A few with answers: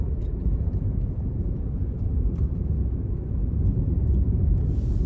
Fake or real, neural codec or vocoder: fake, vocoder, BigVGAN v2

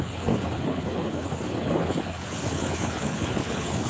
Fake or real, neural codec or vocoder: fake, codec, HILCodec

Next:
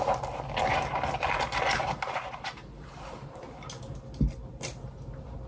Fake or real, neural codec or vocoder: real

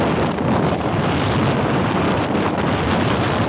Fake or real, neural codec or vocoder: real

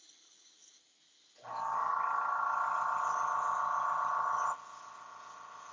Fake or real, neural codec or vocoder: real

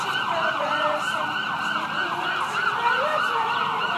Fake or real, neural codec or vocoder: real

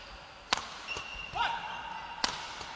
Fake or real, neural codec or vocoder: real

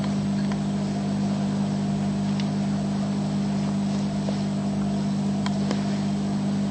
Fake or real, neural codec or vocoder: real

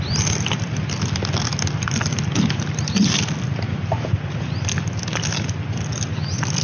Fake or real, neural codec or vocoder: real